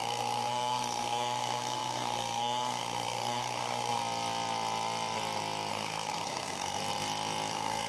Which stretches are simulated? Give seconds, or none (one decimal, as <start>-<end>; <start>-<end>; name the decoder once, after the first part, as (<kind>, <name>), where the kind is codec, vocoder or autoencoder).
0.0-4.0 (codec, SNAC); 5.7-6.8; 7.5-7.9